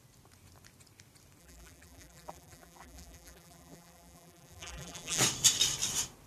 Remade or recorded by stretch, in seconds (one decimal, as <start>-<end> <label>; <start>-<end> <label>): 0.0-1.4 recorded; 1.4-5.2 remade; 5.2-6.3 recorded